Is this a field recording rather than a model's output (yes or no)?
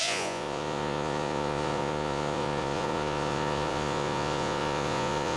no